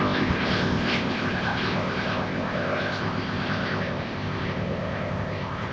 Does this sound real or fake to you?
fake